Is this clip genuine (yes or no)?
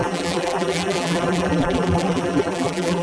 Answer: no